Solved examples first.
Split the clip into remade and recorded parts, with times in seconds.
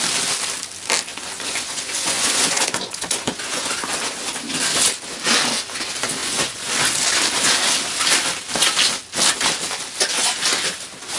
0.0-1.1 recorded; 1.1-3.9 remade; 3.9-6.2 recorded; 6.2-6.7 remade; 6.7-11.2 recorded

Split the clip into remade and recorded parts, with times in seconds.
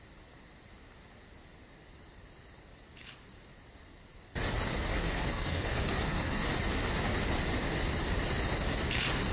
0.0-4.9 recorded; 4.9-6.5 remade; 6.5-9.3 recorded